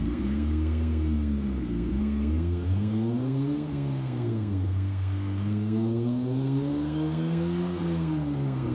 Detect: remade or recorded remade